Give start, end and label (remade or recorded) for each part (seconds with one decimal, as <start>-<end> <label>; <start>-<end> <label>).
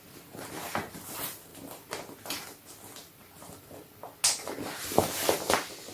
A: 0.0-5.9 recorded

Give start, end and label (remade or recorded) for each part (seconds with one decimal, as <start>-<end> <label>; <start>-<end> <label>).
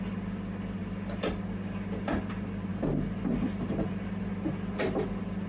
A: 0.0-5.5 recorded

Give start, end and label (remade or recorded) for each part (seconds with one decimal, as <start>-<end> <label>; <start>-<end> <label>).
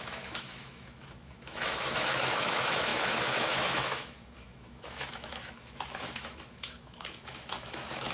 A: 0.0-8.1 remade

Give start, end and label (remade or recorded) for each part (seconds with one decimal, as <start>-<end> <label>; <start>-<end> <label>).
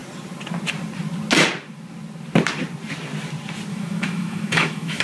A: 0.0-3.7 recorded; 3.7-5.0 remade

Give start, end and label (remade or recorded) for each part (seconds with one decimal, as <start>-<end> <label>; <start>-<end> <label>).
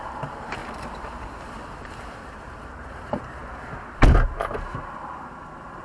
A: 0.0-0.6 remade; 0.6-1.4 recorded; 1.4-3.4 remade; 3.4-5.8 recorded